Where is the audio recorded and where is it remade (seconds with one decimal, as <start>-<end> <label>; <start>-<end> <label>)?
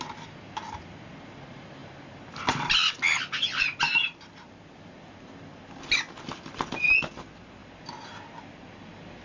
0.0-9.2 recorded